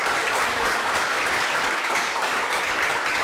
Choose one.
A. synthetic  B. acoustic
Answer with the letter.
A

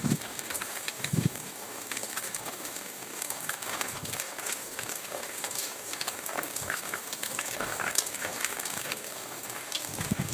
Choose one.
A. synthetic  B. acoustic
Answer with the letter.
A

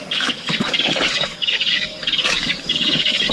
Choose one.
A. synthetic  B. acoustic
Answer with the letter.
A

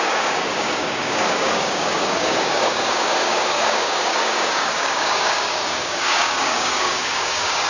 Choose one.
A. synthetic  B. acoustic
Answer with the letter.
A